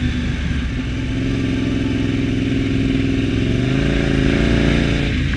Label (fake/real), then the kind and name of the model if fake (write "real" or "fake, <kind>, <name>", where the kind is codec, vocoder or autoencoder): real